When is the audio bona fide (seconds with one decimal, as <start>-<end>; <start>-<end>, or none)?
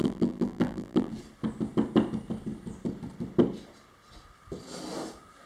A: 1.1-5.5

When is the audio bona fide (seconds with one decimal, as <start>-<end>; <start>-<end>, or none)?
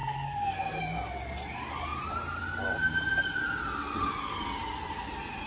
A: 0.8-5.5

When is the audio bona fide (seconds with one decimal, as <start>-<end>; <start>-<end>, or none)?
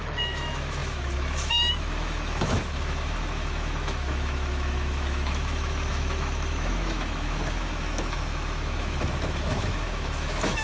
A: none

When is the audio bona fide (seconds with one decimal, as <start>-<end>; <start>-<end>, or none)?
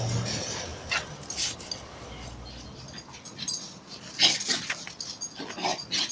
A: 0.0-6.1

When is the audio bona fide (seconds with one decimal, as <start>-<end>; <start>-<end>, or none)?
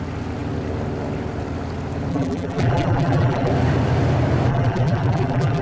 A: 0.0-2.1; 3.5-4.5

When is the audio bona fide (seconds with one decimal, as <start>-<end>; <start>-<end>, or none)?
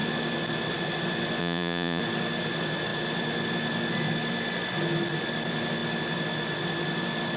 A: 0.0-1.4; 2.0-7.4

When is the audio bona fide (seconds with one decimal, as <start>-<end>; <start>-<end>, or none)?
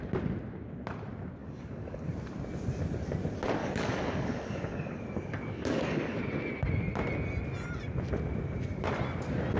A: 0.0-1.4; 2.1-3.6; 6.2-9.6